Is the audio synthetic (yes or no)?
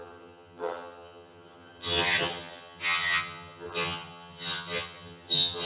yes